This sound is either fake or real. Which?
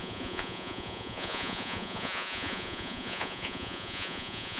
fake